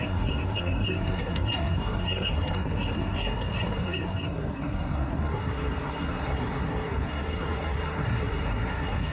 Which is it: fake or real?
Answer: fake